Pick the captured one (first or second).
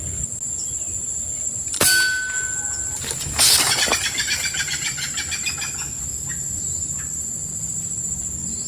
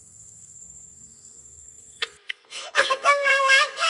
first